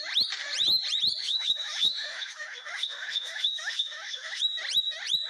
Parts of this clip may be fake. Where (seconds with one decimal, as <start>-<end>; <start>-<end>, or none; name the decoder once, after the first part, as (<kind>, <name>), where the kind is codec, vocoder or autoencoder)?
1.2-4.4 (autoencoder, DAC-VAE)